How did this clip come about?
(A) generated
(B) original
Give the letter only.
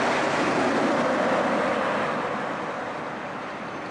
B